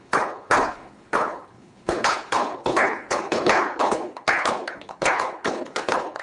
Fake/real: fake